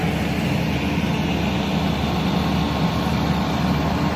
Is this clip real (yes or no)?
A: yes